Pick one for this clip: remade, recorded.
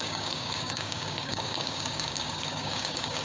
remade